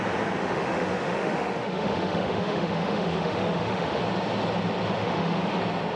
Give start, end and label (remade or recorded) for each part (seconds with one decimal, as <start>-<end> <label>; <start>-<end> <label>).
0.0-0.4 recorded; 0.4-4.0 remade; 4.0-5.0 recorded; 5.0-5.6 remade; 5.6-6.0 recorded